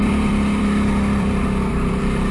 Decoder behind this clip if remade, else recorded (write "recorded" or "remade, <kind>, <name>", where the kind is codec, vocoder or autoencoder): remade, vocoder, BigVGAN v2